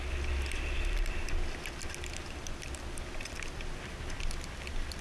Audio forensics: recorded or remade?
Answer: recorded